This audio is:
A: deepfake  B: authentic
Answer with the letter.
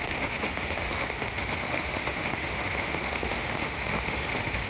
A